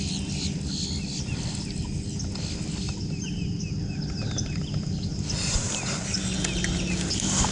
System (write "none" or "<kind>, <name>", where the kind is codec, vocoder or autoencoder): none